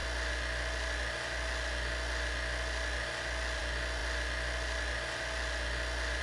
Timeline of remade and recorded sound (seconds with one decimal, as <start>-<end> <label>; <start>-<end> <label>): 0.0-6.2 recorded